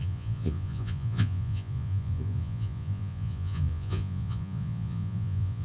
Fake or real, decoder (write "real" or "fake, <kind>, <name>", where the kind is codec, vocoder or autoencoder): fake, vocoder, Vocos